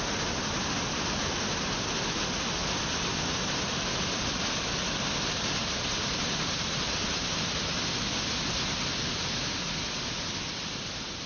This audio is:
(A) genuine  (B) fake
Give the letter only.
A